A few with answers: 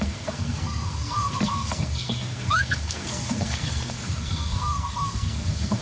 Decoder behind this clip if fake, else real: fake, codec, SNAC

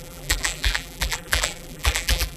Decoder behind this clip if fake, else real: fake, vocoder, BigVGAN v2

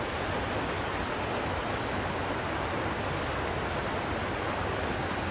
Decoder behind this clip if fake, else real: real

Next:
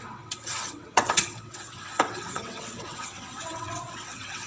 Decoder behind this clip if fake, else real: fake, vocoder, WaveNeXt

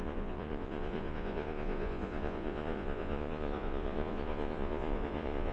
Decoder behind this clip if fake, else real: fake, vocoder, Vocos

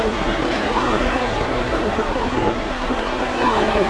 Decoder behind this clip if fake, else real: fake, codec, SNAC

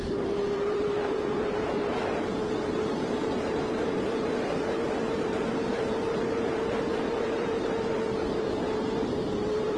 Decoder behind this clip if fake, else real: fake, vocoder, BigVGAN v2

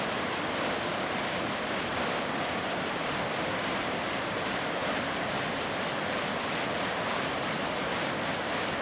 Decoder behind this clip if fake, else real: fake, vocoder, BigVGAN v2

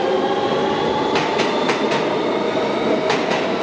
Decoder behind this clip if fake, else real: real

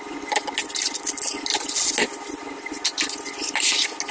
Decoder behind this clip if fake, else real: real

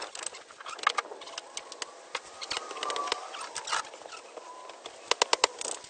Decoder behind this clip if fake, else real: real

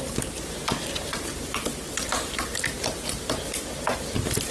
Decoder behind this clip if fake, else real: real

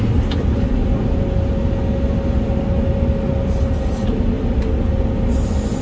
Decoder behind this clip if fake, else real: real